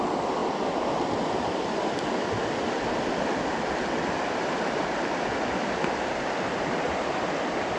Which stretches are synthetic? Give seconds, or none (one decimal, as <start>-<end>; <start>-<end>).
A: none